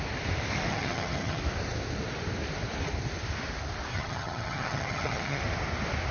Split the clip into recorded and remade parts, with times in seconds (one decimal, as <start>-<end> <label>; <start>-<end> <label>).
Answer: 0.0-0.7 recorded; 0.7-1.4 remade; 1.4-3.9 recorded; 3.9-5.4 remade; 5.4-6.1 recorded